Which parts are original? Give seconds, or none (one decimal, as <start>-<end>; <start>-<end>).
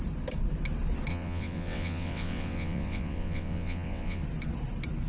0.0-1.1; 4.2-5.1